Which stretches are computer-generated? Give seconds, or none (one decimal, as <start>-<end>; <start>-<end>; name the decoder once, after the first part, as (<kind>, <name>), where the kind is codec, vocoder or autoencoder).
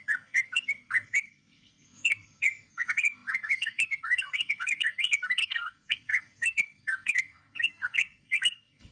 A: 0.0-8.9 (codec, SNAC)